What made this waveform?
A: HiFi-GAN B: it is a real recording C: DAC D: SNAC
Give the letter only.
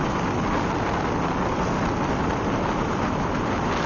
B